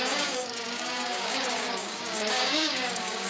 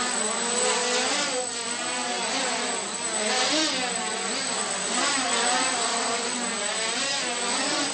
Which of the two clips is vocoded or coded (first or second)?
first